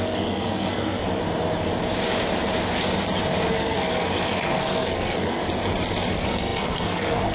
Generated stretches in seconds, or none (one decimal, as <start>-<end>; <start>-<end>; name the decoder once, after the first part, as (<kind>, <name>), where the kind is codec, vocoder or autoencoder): 0.0-1.0 (codec, SNAC); 3.5-5.4; 6.1-7.3